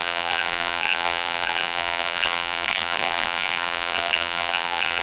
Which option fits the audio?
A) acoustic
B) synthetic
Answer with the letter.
B